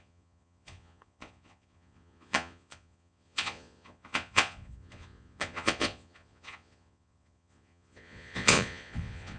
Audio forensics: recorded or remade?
remade